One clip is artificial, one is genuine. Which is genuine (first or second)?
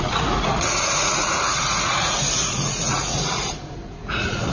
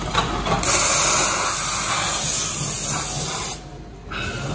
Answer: second